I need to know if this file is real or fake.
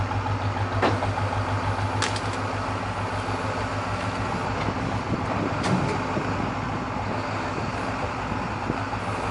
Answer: real